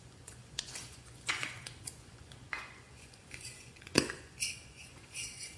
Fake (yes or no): yes